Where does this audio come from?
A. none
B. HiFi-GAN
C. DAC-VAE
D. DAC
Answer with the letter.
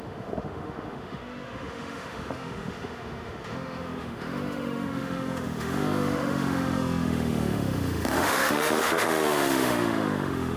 C